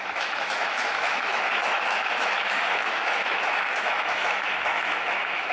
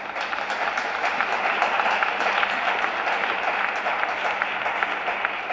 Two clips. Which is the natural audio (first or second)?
second